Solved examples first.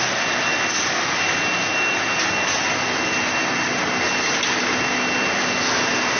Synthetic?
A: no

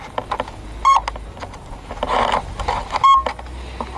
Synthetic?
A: no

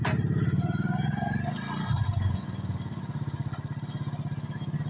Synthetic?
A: no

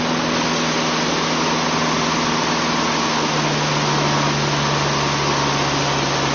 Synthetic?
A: no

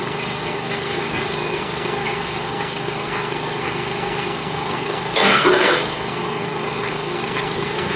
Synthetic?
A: yes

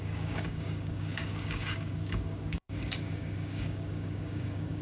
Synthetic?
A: yes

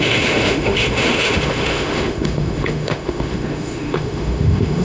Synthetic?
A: yes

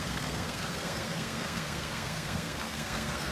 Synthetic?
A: yes